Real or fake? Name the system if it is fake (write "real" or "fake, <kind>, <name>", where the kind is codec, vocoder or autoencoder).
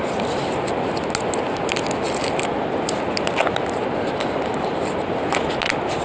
real